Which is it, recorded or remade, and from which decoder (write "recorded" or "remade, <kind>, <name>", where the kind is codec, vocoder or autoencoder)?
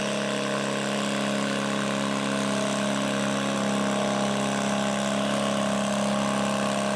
recorded